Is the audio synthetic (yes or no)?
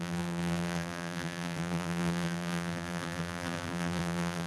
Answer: yes